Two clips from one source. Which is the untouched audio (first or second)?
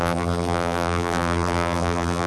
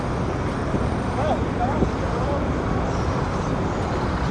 second